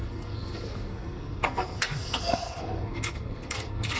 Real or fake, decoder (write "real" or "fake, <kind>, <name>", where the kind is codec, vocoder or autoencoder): fake, codec, SNAC